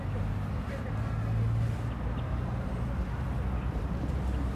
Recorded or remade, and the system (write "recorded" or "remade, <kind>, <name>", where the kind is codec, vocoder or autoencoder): recorded